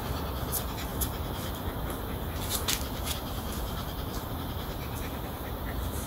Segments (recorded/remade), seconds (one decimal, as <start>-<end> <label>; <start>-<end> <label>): 0.0-0.9 recorded; 0.9-1.8 remade; 1.8-2.5 recorded; 2.5-4.5 remade; 4.5-6.1 recorded